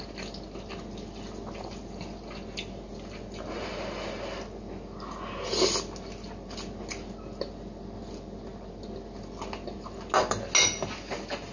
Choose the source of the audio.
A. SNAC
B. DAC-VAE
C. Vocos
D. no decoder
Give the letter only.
D